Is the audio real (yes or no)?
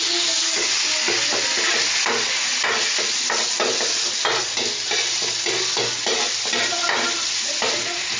yes